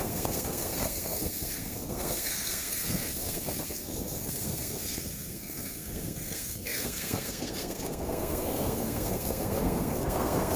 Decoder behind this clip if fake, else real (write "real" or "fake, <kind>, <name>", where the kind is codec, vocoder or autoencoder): fake, codec, SNAC